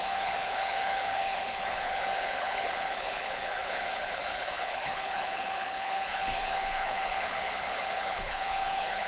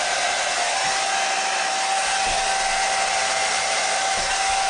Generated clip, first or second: first